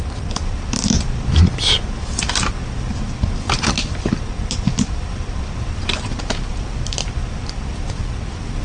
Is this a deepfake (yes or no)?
no